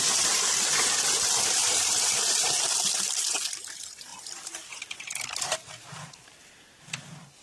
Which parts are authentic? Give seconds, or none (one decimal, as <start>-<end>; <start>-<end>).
0.0-1.6; 2.5-4.1